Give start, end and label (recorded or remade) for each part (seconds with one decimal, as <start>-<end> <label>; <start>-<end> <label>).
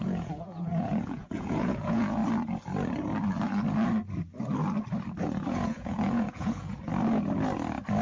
0.0-2.2 remade; 2.2-5.2 recorded; 5.2-6.9 remade; 6.9-8.0 recorded